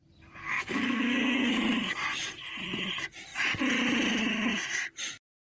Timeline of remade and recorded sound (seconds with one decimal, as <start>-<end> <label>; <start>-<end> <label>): 0.0-0.4 recorded; 0.4-1.5 remade; 1.5-5.5 recorded